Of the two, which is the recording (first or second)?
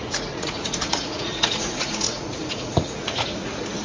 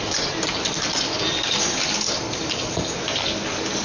second